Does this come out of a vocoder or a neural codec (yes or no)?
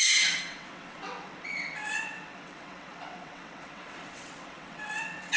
yes